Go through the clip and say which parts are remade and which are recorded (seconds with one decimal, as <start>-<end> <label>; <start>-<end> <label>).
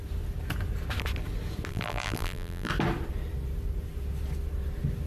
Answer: 0.0-1.7 recorded; 1.7-2.7 remade; 2.7-5.1 recorded